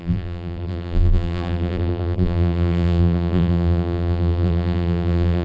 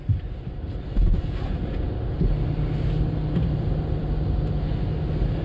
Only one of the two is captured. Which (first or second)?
second